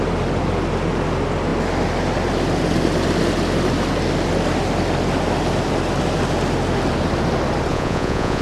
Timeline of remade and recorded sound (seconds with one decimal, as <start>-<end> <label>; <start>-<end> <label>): 0.0-7.7 recorded; 7.7-8.4 remade